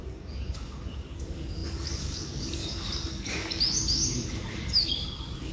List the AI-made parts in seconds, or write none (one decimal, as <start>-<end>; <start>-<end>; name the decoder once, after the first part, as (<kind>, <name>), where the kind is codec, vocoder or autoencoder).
0.0-5.5 (codec, DAC)